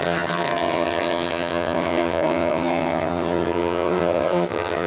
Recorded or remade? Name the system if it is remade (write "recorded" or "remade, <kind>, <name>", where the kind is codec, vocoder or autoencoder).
remade, vocoder, HiFi-GAN